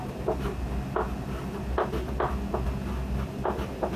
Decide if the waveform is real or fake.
real